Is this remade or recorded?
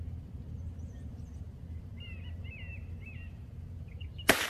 recorded